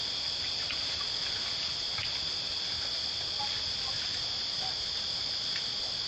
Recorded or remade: recorded